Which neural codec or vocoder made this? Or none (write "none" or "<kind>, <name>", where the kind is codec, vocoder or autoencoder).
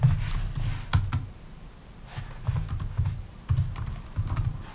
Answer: none